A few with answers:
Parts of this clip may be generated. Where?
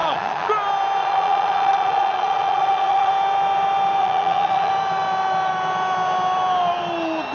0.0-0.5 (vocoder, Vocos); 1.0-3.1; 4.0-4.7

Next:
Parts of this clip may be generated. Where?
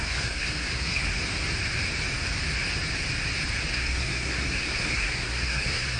0.0-1.1 (codec, SNAC); 3.7-6.0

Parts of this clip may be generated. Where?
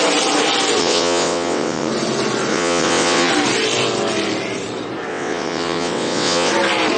0.8-1.9 (vocoder, WaveNeXt); 2.5-3.3; 5.1-6.5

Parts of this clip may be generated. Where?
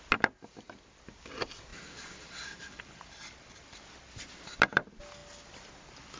none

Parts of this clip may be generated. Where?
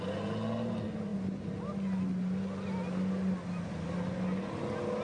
none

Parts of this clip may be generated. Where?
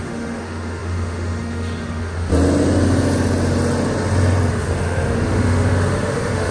0.0-2.3 (autoencoder, DAC-VAE); 4.5-6.5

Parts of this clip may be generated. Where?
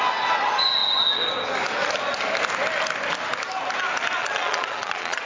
4.2-5.3 (vocoder, Vocos)